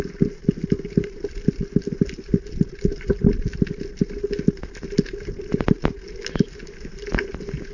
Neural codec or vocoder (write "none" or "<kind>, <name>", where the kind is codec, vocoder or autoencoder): none